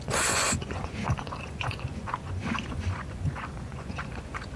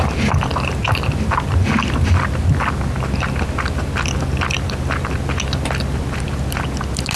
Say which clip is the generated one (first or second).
first